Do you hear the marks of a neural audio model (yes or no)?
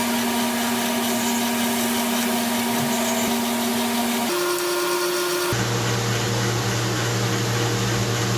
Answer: no